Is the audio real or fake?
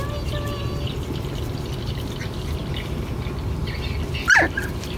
real